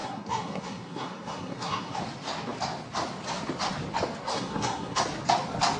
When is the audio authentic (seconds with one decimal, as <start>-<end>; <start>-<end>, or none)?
2.0-4.3; 5.0-5.8